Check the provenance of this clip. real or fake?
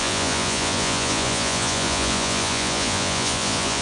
fake